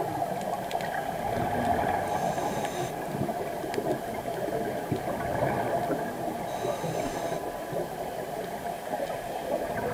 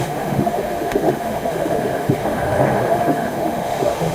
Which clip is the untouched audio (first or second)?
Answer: first